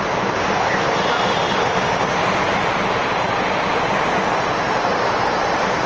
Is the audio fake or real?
real